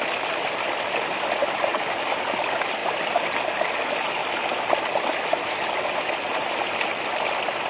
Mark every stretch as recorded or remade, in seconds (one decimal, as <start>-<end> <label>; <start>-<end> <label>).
0.0-1.7 recorded; 1.7-2.2 remade; 2.2-7.7 recorded